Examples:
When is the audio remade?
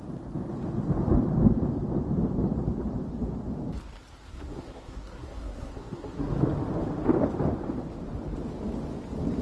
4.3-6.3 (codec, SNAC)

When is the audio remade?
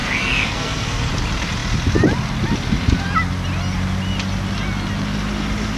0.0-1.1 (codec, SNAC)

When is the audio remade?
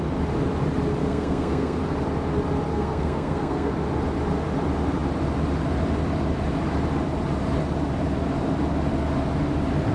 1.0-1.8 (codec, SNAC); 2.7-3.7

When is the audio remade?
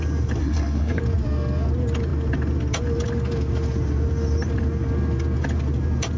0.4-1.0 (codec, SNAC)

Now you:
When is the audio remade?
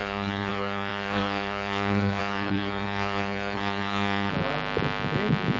0.0-4.3 (codec, SNAC)